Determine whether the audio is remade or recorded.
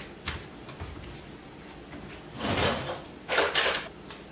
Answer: recorded